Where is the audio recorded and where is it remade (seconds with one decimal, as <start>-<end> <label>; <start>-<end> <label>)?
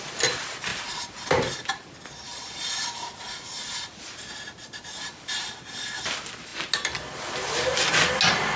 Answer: 0.0-8.6 recorded